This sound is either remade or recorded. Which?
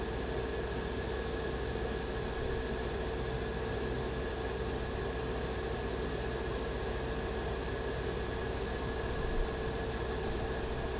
recorded